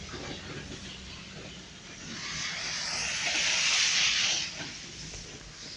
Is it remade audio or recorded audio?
recorded